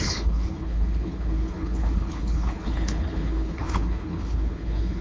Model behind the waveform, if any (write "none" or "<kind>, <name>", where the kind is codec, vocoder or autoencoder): codec, HILCodec